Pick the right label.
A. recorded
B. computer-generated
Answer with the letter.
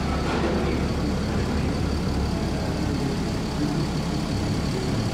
A